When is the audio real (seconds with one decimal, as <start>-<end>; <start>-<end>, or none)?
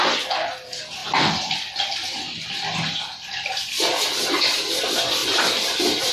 none